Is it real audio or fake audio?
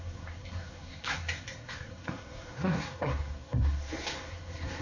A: fake